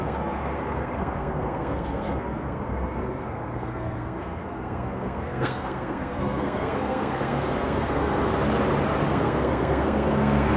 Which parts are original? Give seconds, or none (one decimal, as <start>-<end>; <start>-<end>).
8.3-9.1